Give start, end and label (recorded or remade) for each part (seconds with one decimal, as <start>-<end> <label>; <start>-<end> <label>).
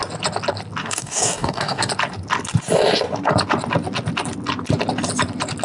0.0-0.8 recorded; 0.8-1.9 remade; 1.9-5.6 recorded